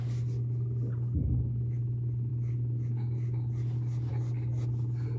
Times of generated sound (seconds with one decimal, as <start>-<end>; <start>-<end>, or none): none